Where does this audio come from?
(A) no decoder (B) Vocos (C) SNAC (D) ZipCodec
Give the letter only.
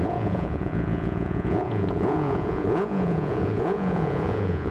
B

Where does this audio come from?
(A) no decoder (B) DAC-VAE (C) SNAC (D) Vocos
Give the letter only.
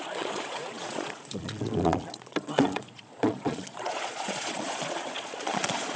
D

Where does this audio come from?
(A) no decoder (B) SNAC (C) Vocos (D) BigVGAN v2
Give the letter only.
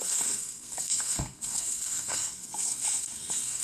B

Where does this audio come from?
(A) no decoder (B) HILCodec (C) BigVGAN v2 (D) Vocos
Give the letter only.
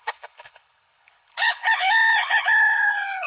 B